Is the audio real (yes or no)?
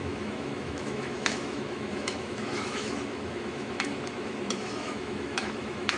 no